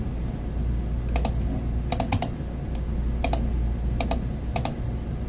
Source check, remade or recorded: recorded